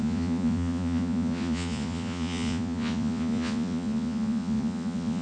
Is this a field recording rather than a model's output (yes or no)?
no